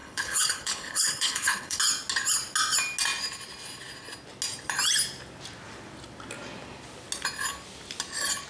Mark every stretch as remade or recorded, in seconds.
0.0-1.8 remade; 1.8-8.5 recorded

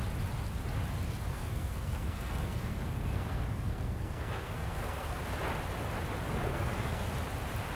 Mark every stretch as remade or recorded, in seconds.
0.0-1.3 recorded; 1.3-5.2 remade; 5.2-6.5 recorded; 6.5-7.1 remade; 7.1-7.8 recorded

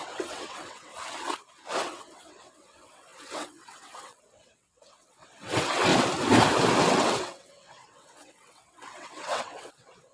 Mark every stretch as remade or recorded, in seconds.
0.0-0.9 remade; 0.9-1.8 recorded; 1.8-5.9 remade; 5.9-6.8 recorded; 6.8-10.1 remade

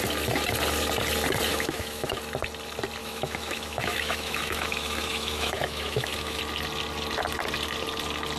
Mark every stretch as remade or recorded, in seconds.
0.0-1.5 recorded; 1.5-2.2 remade; 2.2-3.0 recorded; 3.0-6.4 remade; 6.4-8.4 recorded

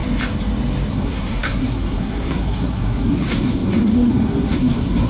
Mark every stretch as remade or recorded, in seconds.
0.0-0.9 recorded; 0.9-5.1 remade